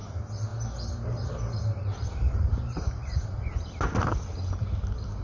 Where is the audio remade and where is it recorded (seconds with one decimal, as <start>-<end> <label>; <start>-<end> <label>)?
0.0-0.5 recorded; 0.5-3.5 remade; 3.5-5.2 recorded